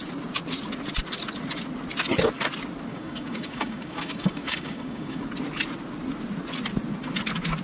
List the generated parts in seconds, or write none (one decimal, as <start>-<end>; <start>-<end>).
2.9-5.2